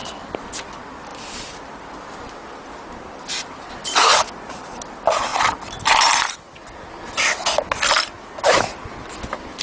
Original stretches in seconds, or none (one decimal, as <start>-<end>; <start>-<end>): 0.0-9.6